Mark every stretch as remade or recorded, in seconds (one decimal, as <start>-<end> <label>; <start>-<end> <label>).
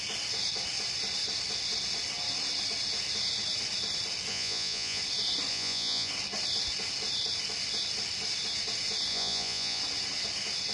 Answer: 0.0-4.3 recorded; 4.3-5.0 remade; 5.0-5.5 recorded; 5.5-6.1 remade; 6.1-9.1 recorded; 9.1-9.8 remade; 9.8-10.7 recorded